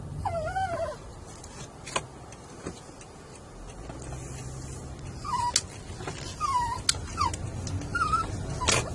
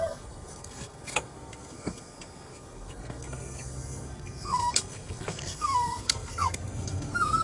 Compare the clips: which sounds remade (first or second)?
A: second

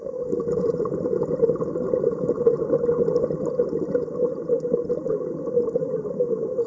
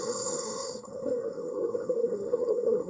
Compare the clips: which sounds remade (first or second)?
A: second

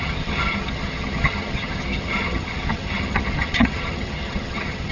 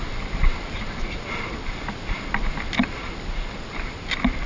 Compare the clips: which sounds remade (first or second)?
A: first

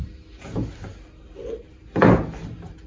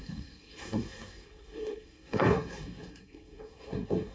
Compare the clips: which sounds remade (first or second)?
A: second